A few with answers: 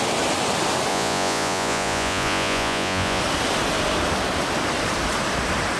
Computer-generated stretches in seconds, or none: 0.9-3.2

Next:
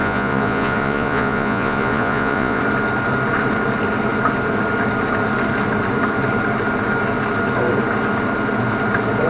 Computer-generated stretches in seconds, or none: 0.0-2.6

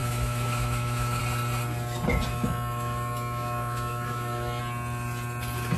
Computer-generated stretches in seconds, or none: 0.0-1.2; 2.3-4.6

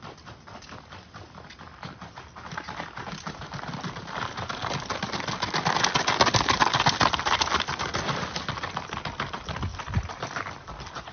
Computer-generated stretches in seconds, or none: none